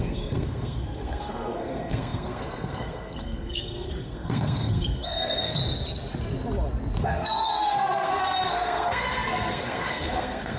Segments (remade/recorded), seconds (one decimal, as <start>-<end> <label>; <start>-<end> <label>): 0.0-5.6 remade; 5.6-7.0 recorded; 7.0-10.6 remade

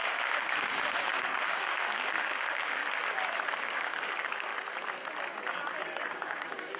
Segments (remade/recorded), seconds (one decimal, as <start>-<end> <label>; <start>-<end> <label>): 0.0-2.8 remade; 2.8-3.6 recorded; 3.6-4.5 remade; 4.5-6.1 recorded; 6.1-6.8 remade